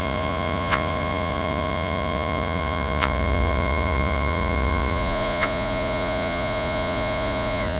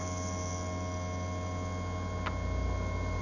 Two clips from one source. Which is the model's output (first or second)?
first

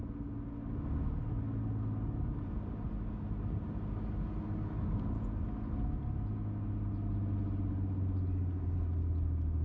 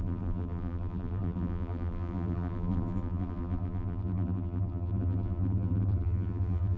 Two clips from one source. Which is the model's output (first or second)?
second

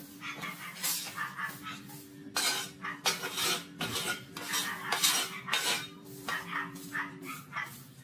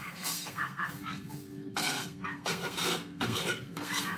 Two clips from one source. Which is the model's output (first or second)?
second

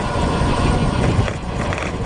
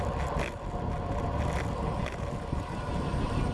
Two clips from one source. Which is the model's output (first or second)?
first